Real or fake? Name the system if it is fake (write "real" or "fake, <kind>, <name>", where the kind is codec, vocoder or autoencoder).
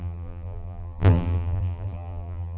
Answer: fake, vocoder, BigVGAN v2